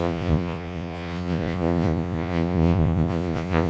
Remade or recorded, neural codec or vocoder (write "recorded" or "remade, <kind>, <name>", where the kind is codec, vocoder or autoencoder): remade, vocoder, Vocos